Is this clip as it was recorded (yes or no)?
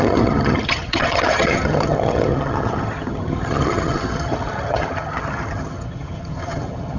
no